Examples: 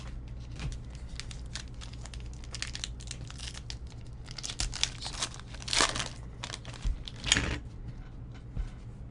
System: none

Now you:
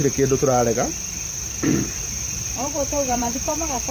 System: vocoder, BigVGAN v2